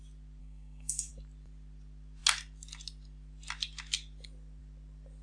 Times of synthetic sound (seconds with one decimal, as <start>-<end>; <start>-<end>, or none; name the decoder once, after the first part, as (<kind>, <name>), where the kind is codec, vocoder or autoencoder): 0.4-1.1 (codec, SNAC)